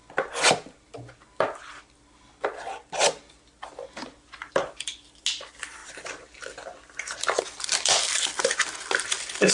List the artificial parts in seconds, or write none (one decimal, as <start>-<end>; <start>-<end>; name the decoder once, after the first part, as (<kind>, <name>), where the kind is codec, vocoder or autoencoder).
none